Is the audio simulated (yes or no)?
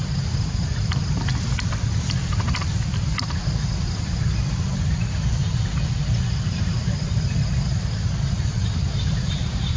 no